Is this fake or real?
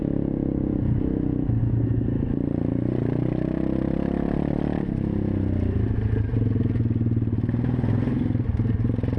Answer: real